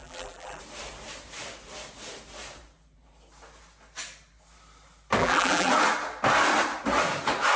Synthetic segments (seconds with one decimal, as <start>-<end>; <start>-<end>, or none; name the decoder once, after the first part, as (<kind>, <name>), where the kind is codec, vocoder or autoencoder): 0.0-0.6 (vocoder, BigVGAN v2); 5.2-5.7